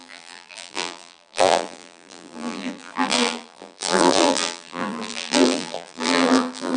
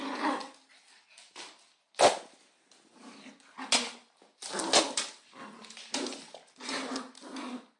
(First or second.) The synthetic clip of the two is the first